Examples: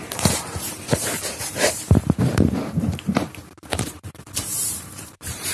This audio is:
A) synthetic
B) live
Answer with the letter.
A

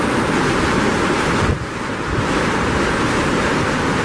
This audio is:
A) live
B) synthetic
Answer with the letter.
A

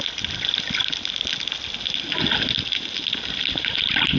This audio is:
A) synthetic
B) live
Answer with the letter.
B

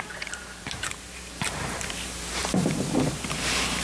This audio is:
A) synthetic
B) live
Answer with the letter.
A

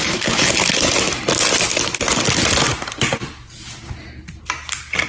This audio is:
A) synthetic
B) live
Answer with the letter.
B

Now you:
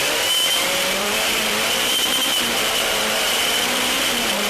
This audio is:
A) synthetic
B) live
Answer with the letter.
A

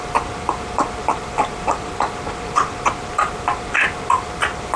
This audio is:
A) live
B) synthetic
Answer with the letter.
A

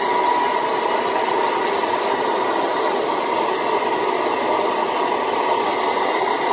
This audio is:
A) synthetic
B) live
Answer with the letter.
B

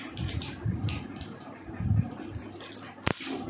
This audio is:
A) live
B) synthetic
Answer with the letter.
B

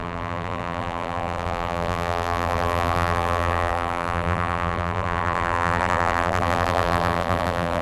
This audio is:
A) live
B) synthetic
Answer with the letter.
B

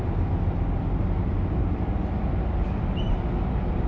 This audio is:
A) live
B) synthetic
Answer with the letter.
A